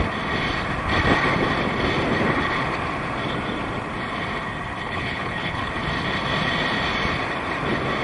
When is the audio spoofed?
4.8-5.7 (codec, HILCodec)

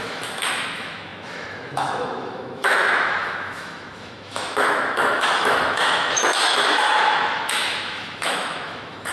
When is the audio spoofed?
0.0-9.1 (autoencoder, DAC-VAE)

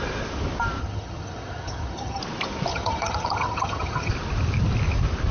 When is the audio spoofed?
0.8-2.2 (vocoder, HiFi-GAN); 2.7-4.1

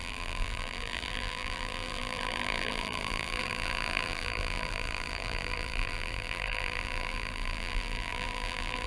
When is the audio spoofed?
0.0-8.9 (vocoder, BigVGAN v2)